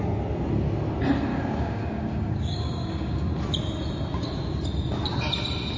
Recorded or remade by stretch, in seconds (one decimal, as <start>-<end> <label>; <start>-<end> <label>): 0.0-1.3 recorded; 1.3-3.3 remade; 3.3-5.8 recorded

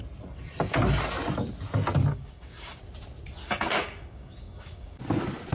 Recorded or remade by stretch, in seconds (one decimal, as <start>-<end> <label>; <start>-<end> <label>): 0.0-2.1 recorded; 2.1-2.8 remade; 2.8-3.4 recorded; 3.4-5.0 remade; 5.0-5.5 recorded

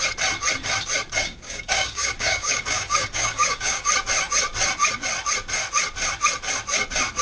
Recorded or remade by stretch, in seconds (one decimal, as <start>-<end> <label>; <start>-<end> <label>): 0.0-1.2 recorded; 1.2-3.9 remade; 3.9-7.2 recorded

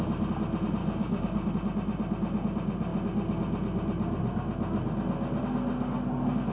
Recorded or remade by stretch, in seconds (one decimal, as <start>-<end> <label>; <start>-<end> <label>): 0.0-0.8 recorded; 0.8-1.5 remade; 1.5-6.5 recorded

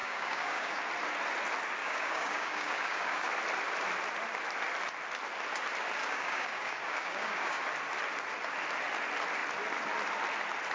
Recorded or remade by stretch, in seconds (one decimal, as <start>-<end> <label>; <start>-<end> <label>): 0.0-0.8 remade; 0.8-1.8 recorded; 1.8-3.3 remade; 3.3-6.0 recorded; 6.0-7.6 remade; 7.6-10.7 recorded

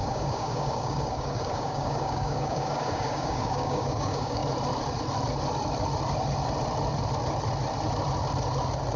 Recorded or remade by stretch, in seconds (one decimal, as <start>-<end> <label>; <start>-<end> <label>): 0.0-4.4 remade; 4.4-9.0 recorded